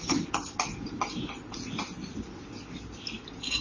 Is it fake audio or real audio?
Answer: real